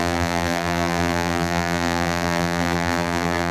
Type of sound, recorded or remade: remade